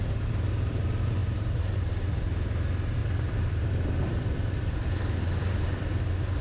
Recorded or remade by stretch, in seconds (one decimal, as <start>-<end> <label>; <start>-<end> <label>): 0.0-1.2 recorded; 1.2-2.0 remade; 2.0-3.0 recorded; 3.0-6.0 remade; 6.0-6.4 recorded